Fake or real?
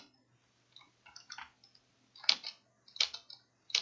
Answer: real